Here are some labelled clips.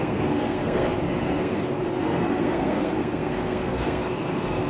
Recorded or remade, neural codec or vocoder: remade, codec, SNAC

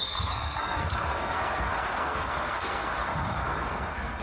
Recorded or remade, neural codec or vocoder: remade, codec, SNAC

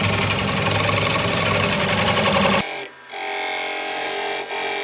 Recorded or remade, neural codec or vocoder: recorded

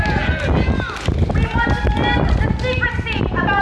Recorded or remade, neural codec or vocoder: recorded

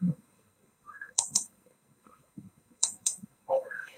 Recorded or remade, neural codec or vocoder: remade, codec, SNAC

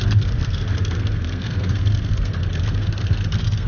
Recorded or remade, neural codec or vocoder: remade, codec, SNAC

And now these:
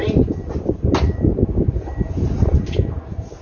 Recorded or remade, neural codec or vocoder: recorded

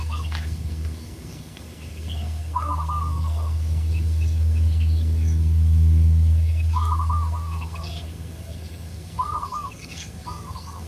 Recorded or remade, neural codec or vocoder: remade, codec, SNAC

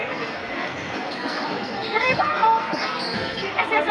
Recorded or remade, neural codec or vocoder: remade, codec, SNAC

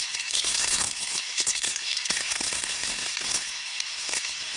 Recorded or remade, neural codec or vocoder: remade, codec, SNAC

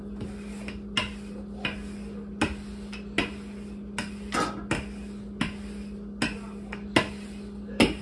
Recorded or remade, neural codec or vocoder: recorded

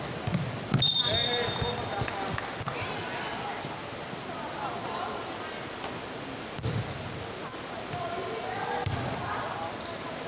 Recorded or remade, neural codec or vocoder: recorded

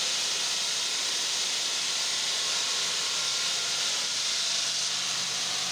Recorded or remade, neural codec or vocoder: recorded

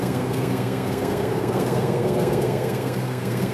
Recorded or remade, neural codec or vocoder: remade, codec, SNAC